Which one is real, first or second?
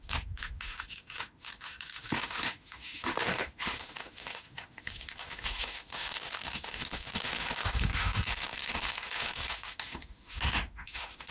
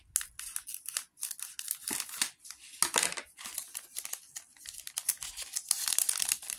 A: second